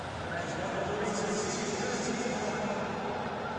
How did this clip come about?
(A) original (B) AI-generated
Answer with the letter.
B